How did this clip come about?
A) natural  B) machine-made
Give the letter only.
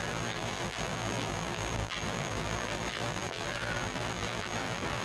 B